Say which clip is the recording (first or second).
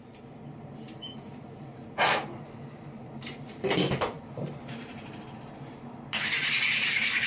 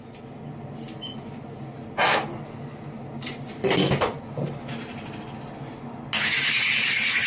second